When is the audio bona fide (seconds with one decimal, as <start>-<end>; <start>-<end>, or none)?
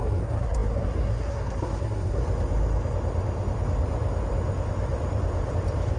2.2-6.0